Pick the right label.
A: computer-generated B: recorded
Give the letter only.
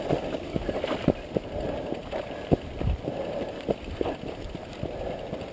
B